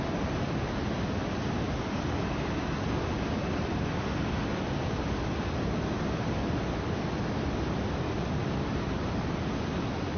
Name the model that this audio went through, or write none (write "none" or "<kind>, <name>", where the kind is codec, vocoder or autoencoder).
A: none